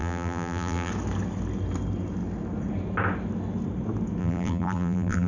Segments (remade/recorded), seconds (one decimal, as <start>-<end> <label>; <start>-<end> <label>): 0.0-0.9 remade; 0.9-4.2 recorded; 4.2-5.3 remade